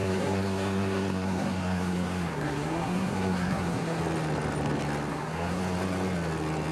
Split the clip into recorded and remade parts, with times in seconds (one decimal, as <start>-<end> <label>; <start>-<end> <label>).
0.0-4.0 remade; 4.0-5.1 recorded; 5.1-5.6 remade; 5.6-6.7 recorded